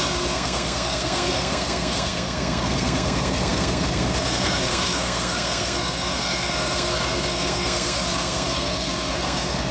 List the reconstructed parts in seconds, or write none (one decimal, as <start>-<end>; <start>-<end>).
0.0-9.7